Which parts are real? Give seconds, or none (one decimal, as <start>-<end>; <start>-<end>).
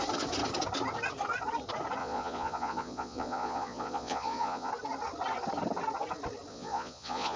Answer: 0.0-2.0; 4.7-6.5